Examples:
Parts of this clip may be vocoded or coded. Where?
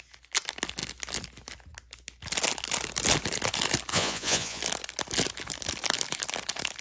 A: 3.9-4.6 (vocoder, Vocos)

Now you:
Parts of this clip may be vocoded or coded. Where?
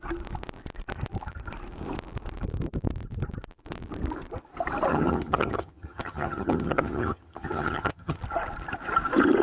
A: 4.9-8.2 (vocoder, HiFi-GAN)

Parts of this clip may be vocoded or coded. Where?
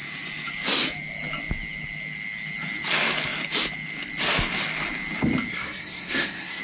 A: 5.5-6.6 (codec, SNAC)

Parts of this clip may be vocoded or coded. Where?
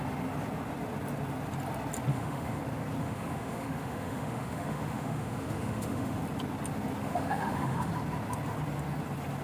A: 2.1-2.6 (autoencoder, DAC-VAE); 3.0-6.2; 7.0-7.9